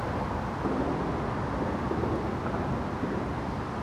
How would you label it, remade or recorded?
recorded